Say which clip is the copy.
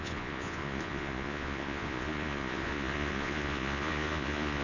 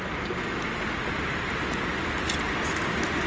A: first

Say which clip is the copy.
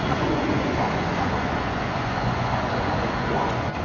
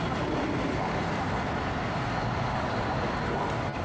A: first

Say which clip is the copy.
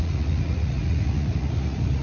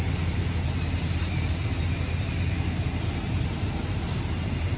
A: first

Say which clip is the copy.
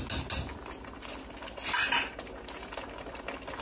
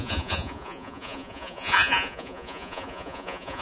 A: second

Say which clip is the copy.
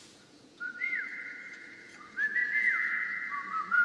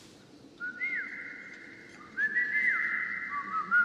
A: first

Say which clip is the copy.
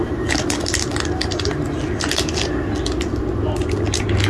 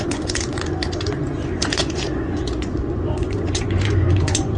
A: second